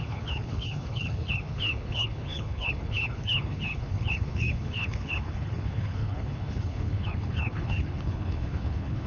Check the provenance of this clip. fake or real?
fake